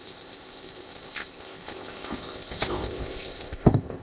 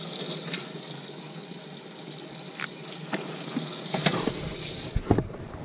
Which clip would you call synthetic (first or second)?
first